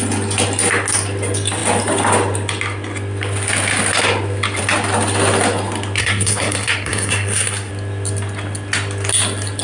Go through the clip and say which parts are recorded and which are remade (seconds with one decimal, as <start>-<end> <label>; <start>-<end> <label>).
0.0-6.0 recorded; 6.0-7.7 remade; 7.7-9.6 recorded